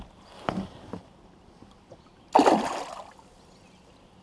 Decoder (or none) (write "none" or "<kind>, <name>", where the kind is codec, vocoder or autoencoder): none